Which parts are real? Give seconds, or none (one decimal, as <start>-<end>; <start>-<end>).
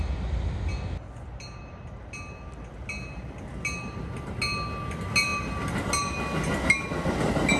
0.0-7.6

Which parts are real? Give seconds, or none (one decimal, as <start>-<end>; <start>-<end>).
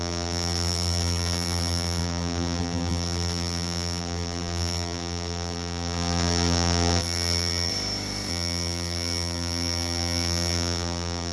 7.7-8.3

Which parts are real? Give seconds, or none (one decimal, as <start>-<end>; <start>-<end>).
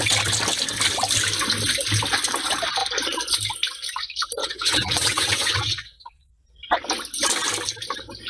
0.0-4.4; 6.3-8.3